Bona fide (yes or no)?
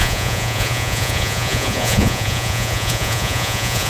no